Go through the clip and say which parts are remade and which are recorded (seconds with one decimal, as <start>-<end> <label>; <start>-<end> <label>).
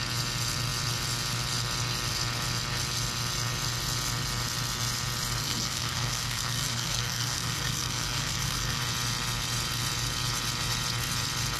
0.0-5.4 recorded; 5.4-8.8 remade; 8.8-11.6 recorded